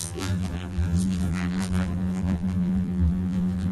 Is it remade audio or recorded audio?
remade